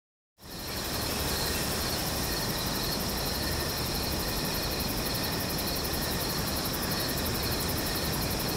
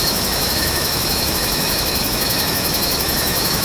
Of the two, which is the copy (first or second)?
second